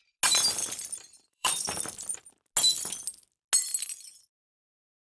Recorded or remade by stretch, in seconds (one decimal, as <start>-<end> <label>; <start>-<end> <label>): 0.0-0.6 recorded; 0.6-2.2 remade; 2.2-5.0 recorded